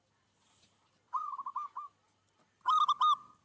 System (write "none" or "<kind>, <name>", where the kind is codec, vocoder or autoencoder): none